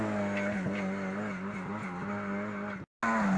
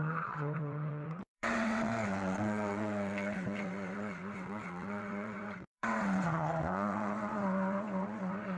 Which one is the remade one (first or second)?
second